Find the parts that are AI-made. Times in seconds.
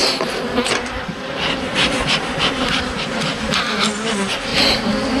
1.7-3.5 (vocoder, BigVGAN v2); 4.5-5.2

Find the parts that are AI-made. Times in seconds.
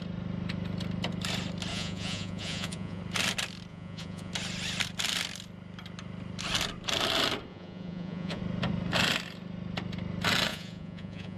1.7-3.0 (vocoder, Vocos); 3.7-4.3; 7.5-8.4; 10.5-11.4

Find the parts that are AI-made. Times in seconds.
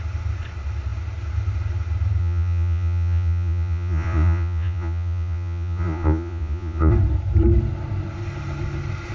2.2-6.9 (vocoder, Vocos)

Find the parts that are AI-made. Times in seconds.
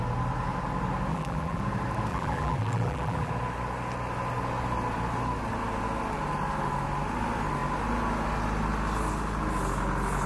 1.1-1.6 (vocoder, BigVGAN v2); 2.1-3.3